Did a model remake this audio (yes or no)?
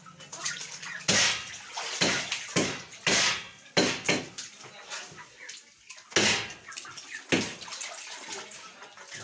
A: no